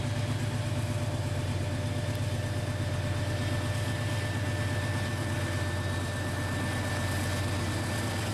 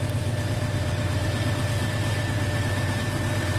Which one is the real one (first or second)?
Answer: first